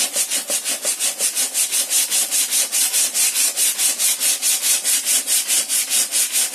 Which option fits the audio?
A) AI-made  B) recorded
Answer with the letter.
B